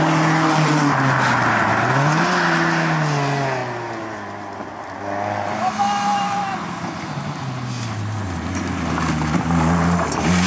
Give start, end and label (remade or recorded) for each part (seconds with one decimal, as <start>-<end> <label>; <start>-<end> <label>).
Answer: 0.0-10.5 recorded